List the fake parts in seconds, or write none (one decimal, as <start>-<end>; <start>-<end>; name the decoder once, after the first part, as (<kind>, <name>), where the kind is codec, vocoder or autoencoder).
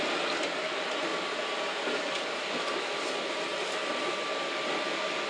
none